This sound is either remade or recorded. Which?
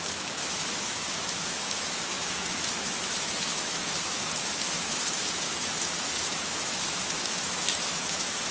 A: remade